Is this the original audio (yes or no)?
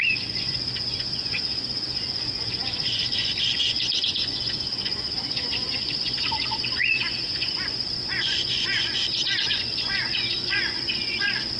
no